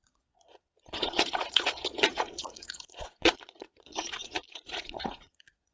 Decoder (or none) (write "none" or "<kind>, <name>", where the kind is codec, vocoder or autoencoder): vocoder, Vocos